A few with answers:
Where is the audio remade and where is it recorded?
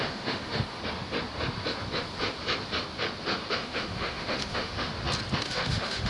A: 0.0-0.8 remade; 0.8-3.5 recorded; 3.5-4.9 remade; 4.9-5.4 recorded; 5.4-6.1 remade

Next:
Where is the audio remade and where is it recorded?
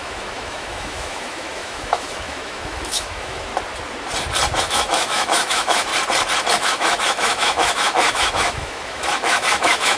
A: 0.0-3.5 remade; 3.5-4.6 recorded; 4.6-5.9 remade; 5.9-6.5 recorded; 6.5-10.0 remade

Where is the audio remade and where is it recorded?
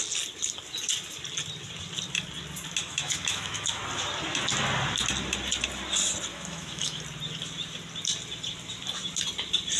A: 0.0-2.8 recorded; 2.8-3.8 remade; 3.8-6.3 recorded; 6.3-7.0 remade; 7.0-9.8 recorded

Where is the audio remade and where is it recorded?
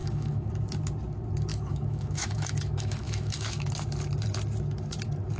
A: 0.0-0.5 remade; 0.5-1.5 recorded; 1.5-3.7 remade; 3.7-5.4 recorded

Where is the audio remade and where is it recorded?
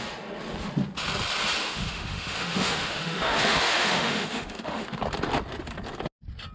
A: 0.0-1.6 recorded; 1.6-5.0 remade; 5.0-6.5 recorded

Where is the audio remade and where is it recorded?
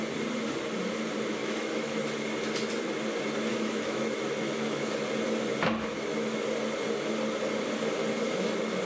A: 0.0-1.4 recorded; 1.4-2.0 remade; 2.0-3.5 recorded; 3.5-4.9 remade; 4.9-8.9 recorded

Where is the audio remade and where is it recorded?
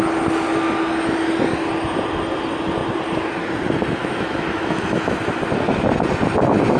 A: 0.0-4.0 recorded; 4.0-5.3 remade; 5.3-6.8 recorded